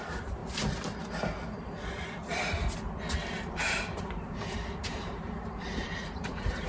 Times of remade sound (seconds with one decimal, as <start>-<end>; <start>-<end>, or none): 0.0-0.4; 3.5-6.7